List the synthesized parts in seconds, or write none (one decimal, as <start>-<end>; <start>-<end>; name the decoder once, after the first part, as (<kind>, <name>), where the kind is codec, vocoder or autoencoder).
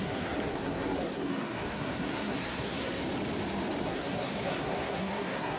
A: 0.0-3.0 (codec, SNAC); 3.8-5.6